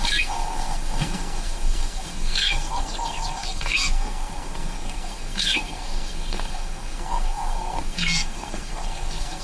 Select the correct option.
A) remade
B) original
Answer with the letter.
A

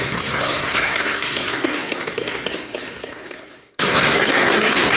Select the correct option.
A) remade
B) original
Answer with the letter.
A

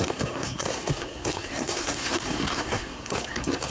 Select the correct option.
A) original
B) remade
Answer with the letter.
B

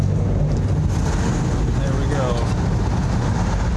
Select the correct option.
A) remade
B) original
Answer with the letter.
B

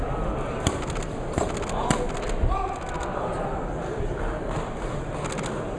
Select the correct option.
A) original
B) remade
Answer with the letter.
A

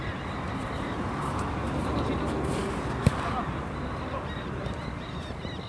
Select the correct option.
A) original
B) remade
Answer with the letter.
A